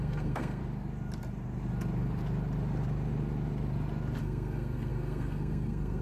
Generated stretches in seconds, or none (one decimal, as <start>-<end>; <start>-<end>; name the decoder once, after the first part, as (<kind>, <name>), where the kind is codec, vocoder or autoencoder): 0.0-0.6 (codec, SNAC); 4.2-6.0